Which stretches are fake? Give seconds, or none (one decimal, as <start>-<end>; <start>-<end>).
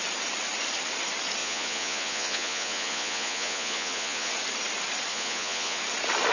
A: 1.4-4.3; 5.1-5.8